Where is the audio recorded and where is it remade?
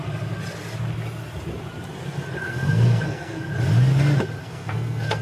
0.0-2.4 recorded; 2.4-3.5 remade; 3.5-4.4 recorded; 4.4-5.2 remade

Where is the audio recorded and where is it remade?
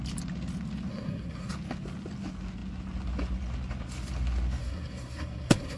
0.0-0.9 recorded; 0.9-1.5 remade; 1.5-4.6 recorded; 4.6-5.8 remade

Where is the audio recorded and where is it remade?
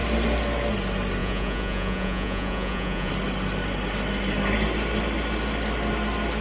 0.0-1.2 recorded; 1.2-3.1 remade; 3.1-6.4 recorded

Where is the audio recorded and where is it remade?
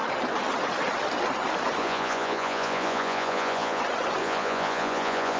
0.0-1.8 recorded; 1.8-3.8 remade; 3.8-4.2 recorded; 4.2-5.4 remade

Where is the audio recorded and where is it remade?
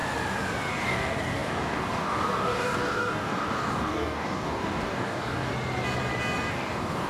0.0-0.7 recorded; 0.7-5.5 remade; 5.5-6.5 recorded; 6.5-7.1 remade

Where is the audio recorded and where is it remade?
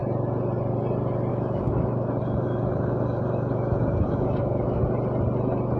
0.0-1.3 recorded; 1.3-4.8 remade; 4.8-5.8 recorded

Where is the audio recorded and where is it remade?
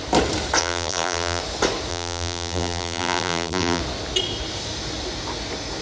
0.0-0.6 recorded; 0.6-1.4 remade; 1.4-1.9 recorded; 1.9-3.8 remade; 3.8-5.8 recorded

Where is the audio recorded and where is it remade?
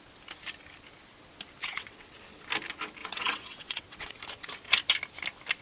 0.0-1.6 recorded; 1.6-2.1 remade; 2.1-3.0 recorded; 3.0-4.1 remade; 4.1-5.6 recorded